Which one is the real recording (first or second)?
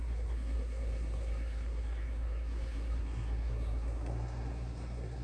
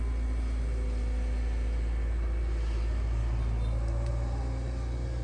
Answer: second